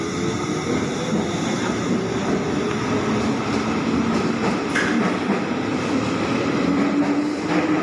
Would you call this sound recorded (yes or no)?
yes